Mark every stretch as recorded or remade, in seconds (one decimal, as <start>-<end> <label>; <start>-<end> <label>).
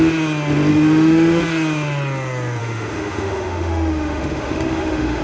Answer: 0.0-0.7 recorded; 0.7-1.4 remade; 1.4-2.6 recorded; 2.6-5.2 remade